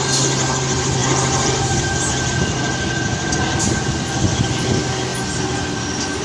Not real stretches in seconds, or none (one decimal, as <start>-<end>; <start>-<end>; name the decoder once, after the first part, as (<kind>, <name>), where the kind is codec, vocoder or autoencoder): none